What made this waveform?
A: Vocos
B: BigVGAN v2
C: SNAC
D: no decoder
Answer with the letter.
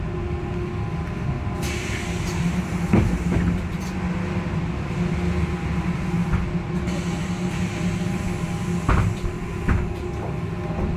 D